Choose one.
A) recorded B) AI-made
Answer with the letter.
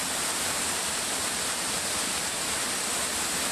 B